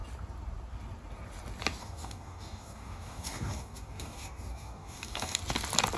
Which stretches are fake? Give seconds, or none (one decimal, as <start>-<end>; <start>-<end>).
1.8-5.4